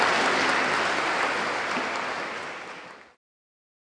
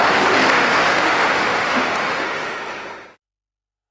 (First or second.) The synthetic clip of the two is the second